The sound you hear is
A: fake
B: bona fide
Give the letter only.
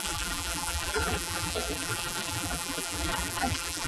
A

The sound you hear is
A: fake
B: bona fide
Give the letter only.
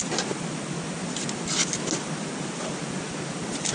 B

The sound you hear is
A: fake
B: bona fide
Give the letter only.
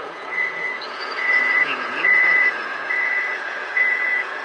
A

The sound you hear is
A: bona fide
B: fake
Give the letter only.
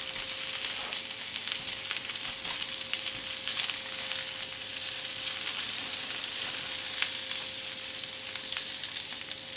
A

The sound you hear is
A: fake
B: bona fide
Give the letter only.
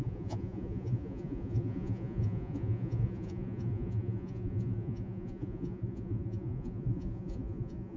A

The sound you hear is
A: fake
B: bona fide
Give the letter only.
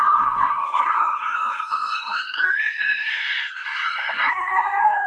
A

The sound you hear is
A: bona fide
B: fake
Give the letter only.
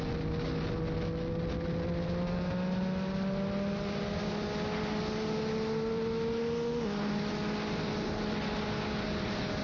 A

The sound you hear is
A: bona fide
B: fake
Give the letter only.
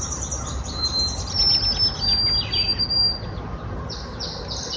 A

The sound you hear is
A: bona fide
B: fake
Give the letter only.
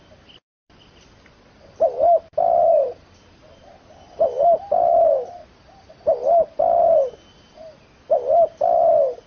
A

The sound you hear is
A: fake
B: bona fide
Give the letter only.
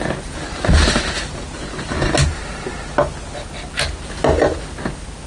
B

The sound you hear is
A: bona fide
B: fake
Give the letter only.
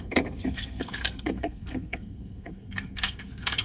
B